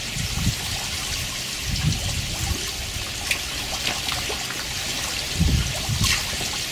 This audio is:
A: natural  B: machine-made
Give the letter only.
A